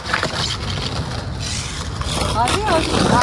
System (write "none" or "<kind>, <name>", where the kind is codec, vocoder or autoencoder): none